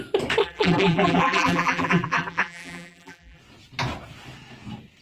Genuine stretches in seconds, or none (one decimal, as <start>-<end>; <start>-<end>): 0.0-0.4; 3.4-5.0